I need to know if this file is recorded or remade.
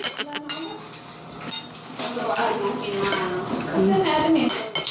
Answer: recorded